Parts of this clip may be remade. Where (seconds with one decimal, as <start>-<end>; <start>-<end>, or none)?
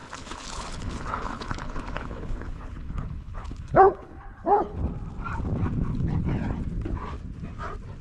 0.0-4.8